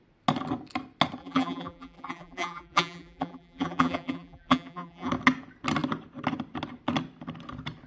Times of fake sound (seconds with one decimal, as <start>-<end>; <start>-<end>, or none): 1.2-5.1